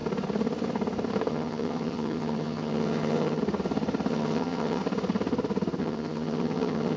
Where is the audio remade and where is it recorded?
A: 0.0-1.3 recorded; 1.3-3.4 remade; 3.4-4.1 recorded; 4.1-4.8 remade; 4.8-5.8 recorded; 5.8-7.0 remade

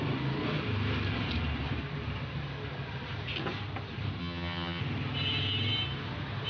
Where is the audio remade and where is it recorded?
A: 0.0-4.2 recorded; 4.2-4.8 remade; 4.8-6.5 recorded